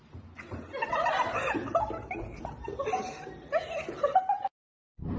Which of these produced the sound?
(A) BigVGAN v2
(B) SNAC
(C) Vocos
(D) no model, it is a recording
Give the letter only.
A